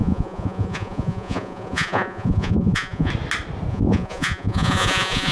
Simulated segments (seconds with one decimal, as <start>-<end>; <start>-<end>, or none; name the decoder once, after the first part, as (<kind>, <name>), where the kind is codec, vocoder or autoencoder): 0.0-3.1 (vocoder, Vocos); 3.7-5.3